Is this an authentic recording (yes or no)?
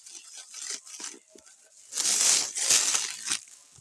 yes